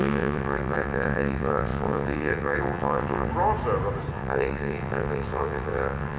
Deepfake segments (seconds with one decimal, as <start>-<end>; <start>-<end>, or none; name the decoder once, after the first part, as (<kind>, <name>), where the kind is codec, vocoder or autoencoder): 0.0-3.3 (vocoder, WaveNeXt); 4.1-6.2